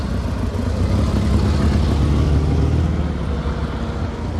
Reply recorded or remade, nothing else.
recorded